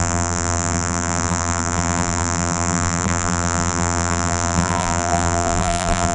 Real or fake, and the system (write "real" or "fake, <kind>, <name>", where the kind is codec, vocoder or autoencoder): fake, vocoder, BigVGAN v2